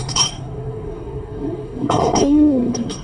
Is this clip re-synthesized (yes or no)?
yes